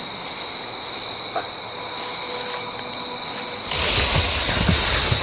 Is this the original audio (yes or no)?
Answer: yes